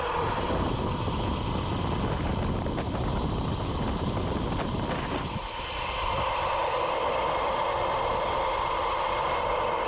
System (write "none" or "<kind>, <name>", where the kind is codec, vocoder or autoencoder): none